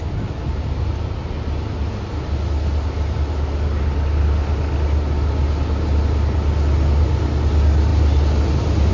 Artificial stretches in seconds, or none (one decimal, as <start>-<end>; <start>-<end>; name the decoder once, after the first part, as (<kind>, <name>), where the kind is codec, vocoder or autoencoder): none